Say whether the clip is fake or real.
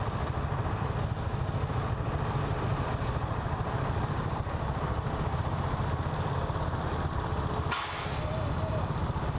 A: real